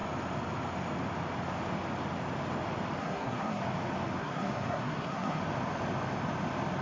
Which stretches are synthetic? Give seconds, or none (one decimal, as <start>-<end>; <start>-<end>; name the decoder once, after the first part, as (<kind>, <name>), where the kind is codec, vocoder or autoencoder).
3.0-3.6 (codec, SNAC); 4.2-5.4